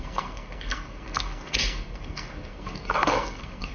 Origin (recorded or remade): remade